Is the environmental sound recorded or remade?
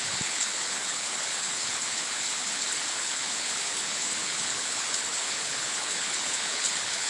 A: remade